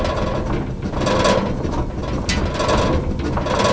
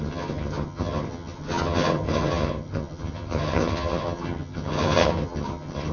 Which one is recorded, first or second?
first